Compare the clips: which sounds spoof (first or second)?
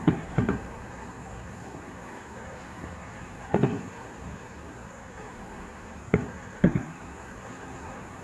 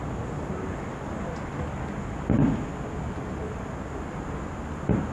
first